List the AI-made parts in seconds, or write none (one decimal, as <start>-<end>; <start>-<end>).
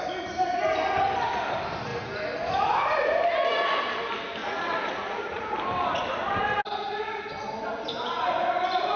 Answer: 4.4-5.5; 6.7-7.3